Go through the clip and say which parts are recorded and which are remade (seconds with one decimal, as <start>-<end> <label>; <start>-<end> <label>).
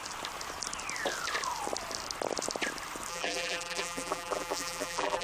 0.0-3.1 recorded; 3.1-5.2 remade